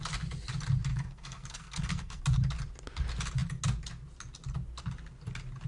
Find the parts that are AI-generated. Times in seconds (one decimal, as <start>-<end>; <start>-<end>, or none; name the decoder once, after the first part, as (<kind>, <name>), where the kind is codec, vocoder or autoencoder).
0.9-2.2 (codec, SNAC)